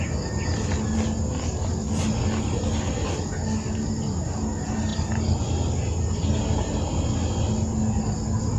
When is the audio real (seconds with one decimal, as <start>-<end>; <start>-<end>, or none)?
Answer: 0.0-8.6